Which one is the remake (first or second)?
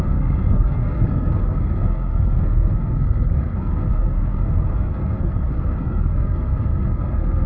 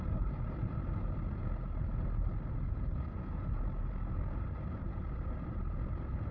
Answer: first